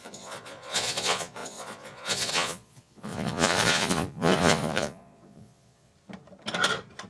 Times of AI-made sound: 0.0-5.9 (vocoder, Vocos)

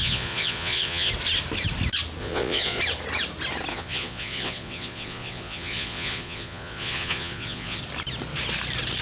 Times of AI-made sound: 0.0-1.1 (vocoder, Vocos); 2.2-2.8; 3.7-7.8